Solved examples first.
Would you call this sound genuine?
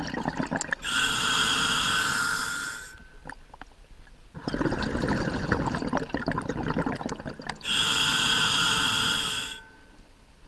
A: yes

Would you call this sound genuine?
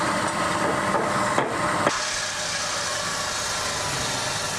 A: yes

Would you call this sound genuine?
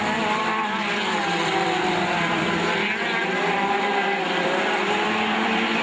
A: no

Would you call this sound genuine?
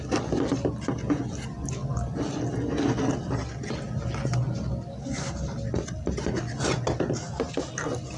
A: yes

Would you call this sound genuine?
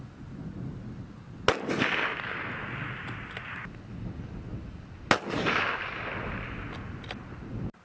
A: yes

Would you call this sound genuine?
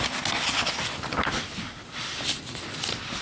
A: no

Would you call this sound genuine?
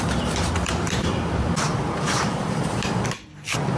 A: no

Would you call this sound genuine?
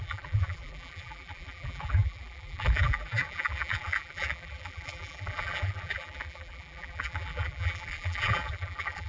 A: no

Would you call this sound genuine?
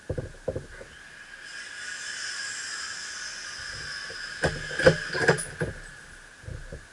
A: yes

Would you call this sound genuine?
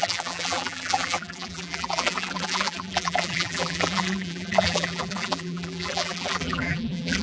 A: no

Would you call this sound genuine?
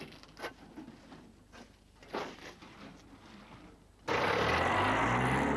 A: yes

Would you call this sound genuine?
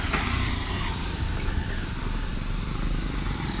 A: no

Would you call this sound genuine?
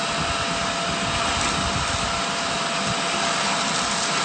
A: yes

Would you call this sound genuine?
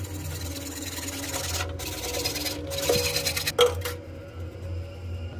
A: yes